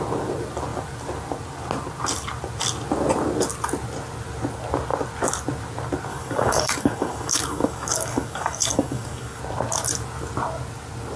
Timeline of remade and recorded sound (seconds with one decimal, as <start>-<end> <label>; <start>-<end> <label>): 0.0-6.1 recorded; 6.1-9.4 remade; 9.4-11.2 recorded